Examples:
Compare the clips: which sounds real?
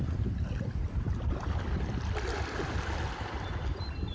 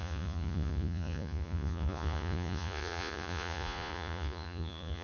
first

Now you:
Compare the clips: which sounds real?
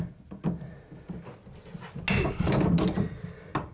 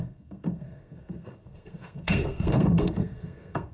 first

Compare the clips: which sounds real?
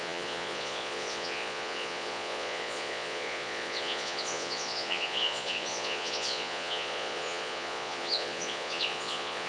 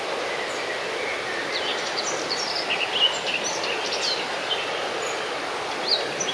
second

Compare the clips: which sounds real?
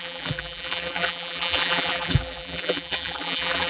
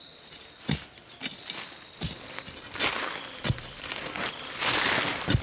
second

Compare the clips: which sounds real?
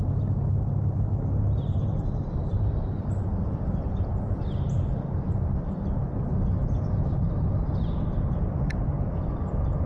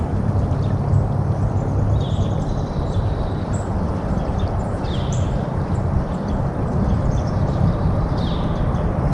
first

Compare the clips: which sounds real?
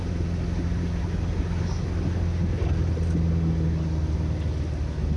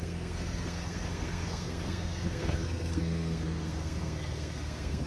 first